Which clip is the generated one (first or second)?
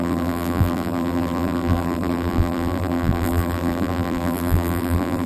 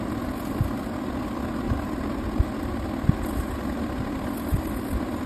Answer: first